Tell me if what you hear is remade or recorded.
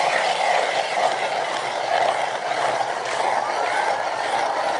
recorded